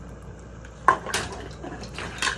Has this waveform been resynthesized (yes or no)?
no